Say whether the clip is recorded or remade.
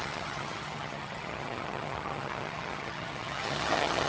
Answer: remade